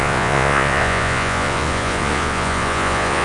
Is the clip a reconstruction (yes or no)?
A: yes